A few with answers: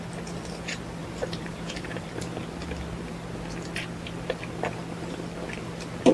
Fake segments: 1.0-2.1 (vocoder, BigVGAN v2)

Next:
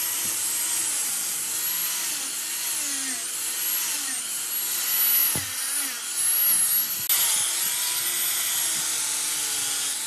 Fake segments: 0.0-0.6 (vocoder, BigVGAN v2); 1.0-1.6

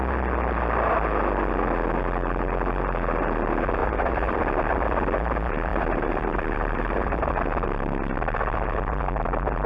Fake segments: 3.8-4.4 (vocoder, BigVGAN v2); 5.7-7.3